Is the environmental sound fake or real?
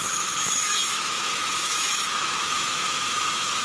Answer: fake